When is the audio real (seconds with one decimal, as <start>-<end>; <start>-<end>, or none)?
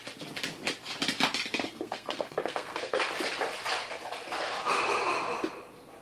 0.0-1.5; 3.0-6.0